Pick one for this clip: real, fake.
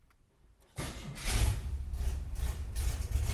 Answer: real